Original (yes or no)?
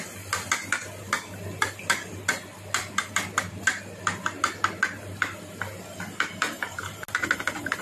yes